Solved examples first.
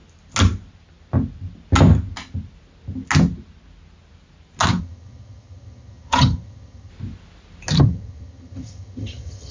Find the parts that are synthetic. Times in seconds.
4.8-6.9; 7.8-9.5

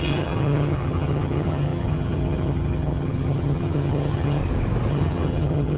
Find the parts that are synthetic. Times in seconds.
0.0-4.4; 4.9-5.8

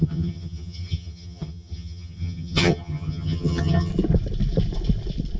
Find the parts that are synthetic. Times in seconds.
0.0-3.9

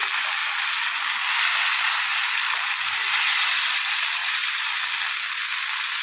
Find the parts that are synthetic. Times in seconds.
0.0-0.4; 1.3-2.1; 2.7-4.2; 4.9-5.5

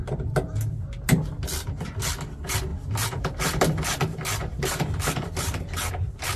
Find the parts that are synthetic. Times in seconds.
0.0-0.7; 2.7-5.9

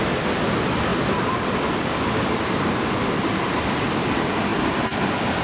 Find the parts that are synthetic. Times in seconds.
none